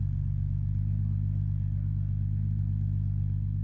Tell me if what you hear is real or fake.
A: real